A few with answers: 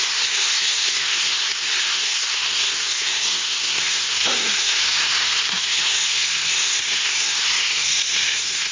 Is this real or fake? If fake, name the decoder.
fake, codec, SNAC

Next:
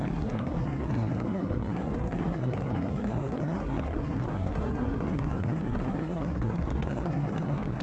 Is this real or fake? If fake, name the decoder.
fake, codec, SNAC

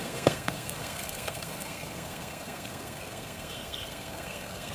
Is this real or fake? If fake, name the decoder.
fake, codec, SNAC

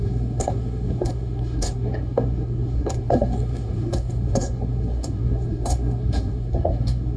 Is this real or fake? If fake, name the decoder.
fake, codec, SNAC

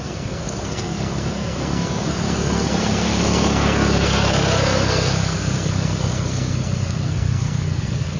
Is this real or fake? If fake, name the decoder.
fake, codec, SNAC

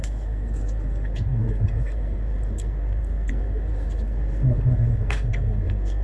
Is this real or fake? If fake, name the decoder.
fake, codec, SNAC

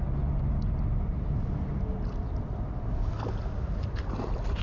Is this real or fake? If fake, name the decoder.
real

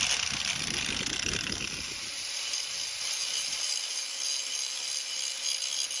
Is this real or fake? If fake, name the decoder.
real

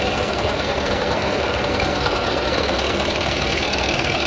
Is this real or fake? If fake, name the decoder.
fake, codec, SNAC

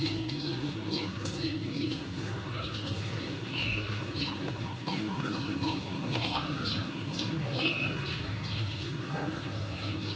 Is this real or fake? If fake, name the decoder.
fake, codec, SNAC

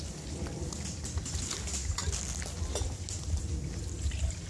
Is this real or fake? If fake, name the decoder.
real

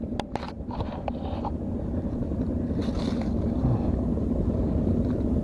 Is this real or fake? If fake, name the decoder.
real